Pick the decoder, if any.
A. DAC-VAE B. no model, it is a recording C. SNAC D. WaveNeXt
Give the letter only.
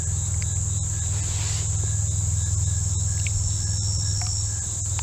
B